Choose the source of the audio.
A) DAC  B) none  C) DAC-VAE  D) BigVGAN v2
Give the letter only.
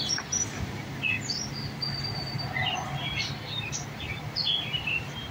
D